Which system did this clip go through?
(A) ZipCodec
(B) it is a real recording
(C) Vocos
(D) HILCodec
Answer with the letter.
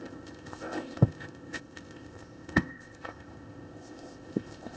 A